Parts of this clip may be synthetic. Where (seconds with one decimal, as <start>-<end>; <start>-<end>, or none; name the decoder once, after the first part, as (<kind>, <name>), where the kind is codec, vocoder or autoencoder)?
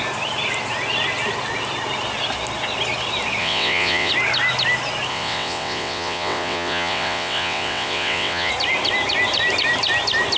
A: 3.4-4.1 (vocoder, WaveNeXt); 5.1-8.5